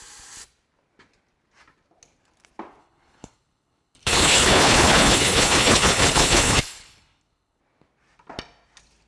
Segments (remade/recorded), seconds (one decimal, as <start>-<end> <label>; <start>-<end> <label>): 0.0-2.8 recorded; 2.8-7.6 remade; 7.6-9.1 recorded